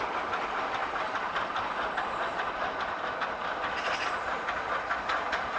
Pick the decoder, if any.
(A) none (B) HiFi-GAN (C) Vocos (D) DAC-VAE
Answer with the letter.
A